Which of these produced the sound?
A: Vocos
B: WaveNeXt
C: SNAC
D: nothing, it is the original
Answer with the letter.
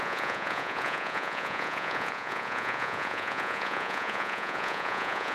A